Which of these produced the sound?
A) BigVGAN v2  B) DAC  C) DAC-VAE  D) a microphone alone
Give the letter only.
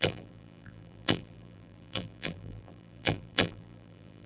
A